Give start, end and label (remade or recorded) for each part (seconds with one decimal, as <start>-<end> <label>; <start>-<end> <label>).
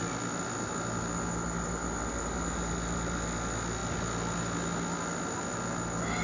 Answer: 0.0-6.2 recorded